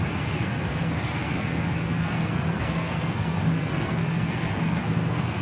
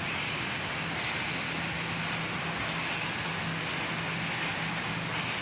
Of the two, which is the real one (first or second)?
second